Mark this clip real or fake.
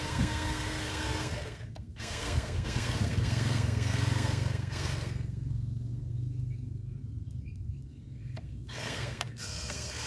fake